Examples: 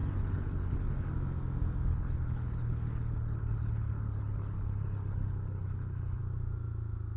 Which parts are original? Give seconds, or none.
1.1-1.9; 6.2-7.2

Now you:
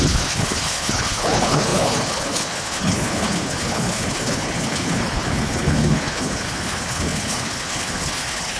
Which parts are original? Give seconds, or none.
none

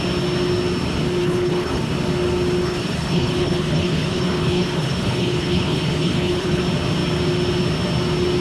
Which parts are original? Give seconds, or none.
0.0-1.2; 1.8-2.6; 6.6-8.4